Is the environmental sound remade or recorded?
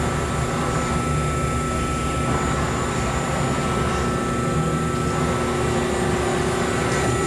recorded